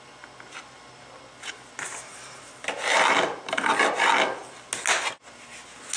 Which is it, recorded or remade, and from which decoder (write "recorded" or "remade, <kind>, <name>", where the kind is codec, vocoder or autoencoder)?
recorded